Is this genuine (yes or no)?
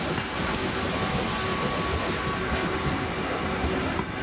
yes